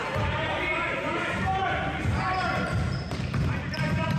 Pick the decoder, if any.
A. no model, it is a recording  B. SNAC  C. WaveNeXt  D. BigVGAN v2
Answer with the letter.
D